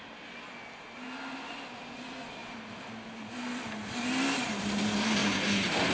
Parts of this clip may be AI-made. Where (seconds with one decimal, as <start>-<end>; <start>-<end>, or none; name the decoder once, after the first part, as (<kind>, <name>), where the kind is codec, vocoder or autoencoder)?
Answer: none